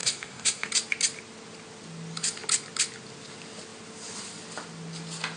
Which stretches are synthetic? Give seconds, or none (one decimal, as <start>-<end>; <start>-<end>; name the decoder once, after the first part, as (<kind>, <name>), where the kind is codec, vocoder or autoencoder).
0.0-0.7 (codec, SNAC)